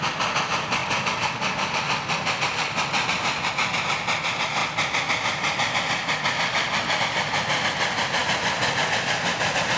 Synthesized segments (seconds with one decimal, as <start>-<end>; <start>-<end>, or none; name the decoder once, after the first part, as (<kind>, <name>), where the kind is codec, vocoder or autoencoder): none